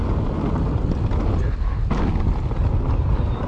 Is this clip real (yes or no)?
yes